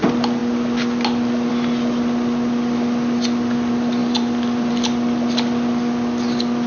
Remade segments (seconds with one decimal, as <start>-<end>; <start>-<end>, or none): 4.0-4.7